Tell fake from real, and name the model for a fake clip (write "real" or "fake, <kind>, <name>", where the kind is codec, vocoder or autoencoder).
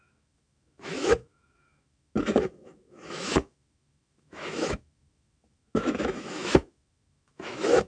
fake, autoencoder, DAC-VAE